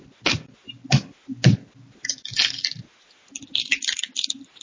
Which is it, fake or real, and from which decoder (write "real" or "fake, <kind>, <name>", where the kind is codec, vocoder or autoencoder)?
real